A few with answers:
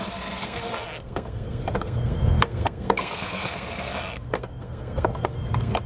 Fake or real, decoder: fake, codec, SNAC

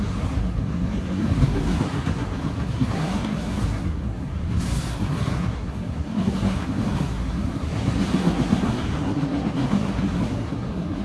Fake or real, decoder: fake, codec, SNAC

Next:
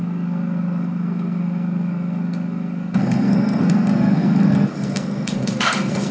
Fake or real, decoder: fake, codec, SNAC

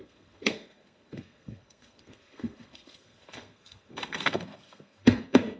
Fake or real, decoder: fake, codec, SNAC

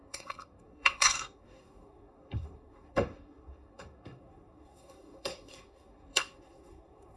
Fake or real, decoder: fake, codec, SNAC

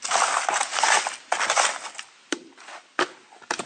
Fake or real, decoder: real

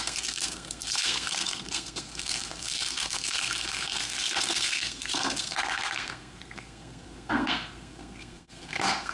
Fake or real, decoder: fake, codec, SNAC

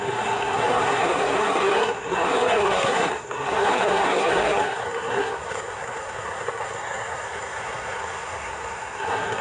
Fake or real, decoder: fake, codec, SNAC